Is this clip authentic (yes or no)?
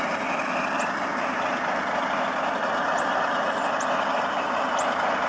yes